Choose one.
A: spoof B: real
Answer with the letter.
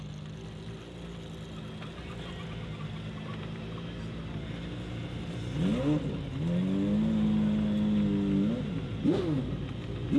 B